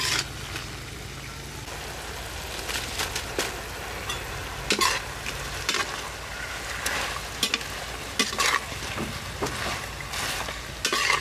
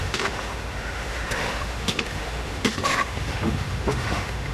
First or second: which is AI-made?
second